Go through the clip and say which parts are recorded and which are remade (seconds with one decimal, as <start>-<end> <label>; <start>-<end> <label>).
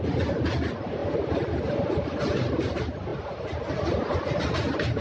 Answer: 0.0-5.0 recorded